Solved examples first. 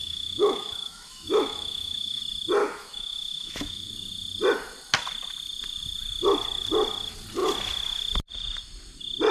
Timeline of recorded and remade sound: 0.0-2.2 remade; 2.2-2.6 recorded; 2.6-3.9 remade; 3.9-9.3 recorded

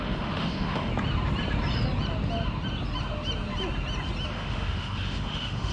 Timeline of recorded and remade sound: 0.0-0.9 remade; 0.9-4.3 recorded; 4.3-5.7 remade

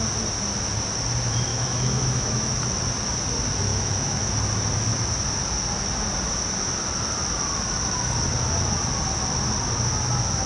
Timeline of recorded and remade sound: 0.0-1.5 recorded; 1.5-2.6 remade; 2.6-3.7 recorded; 3.7-4.3 remade; 4.3-10.5 recorded

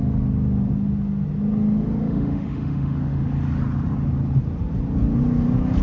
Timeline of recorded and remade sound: 0.0-2.0 recorded; 2.0-3.2 remade; 3.2-5.8 recorded

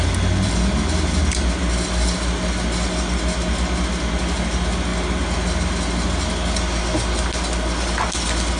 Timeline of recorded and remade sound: 0.0-8.6 recorded

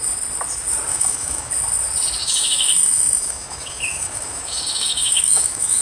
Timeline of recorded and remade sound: 0.0-0.9 recorded; 0.9-1.5 remade; 1.5-2.2 recorded; 2.2-5.8 remade